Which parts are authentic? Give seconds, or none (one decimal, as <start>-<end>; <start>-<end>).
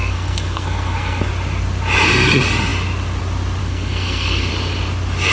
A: 1.3-3.6; 4.5-5.3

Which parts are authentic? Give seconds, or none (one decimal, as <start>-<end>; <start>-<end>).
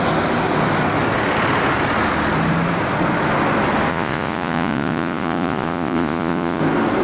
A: 0.0-3.9; 6.6-7.0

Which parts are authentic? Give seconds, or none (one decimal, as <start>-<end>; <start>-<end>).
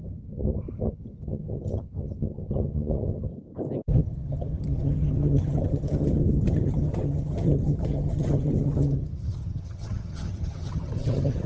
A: 3.3-4.0